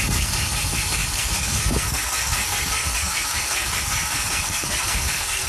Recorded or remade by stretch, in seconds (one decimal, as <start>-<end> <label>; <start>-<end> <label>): 0.0-5.5 remade